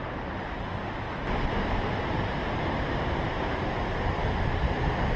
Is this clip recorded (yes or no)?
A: yes